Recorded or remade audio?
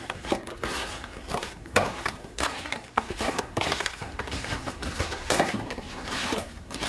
remade